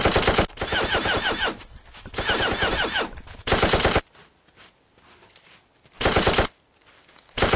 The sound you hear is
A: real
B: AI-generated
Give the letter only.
A